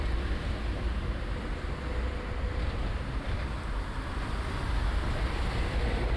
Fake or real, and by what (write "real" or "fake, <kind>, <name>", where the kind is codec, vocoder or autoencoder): fake, vocoder, BigVGAN v2